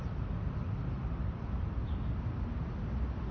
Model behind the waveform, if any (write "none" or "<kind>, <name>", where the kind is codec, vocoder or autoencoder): none